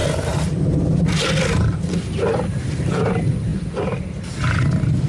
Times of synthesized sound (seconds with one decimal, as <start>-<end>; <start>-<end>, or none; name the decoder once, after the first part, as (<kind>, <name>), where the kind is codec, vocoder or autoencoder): none